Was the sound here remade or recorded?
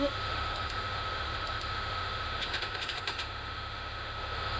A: remade